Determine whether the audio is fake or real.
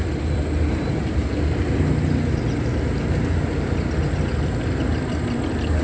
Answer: real